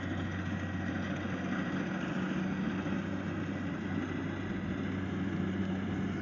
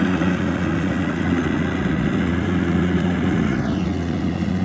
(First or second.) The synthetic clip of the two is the second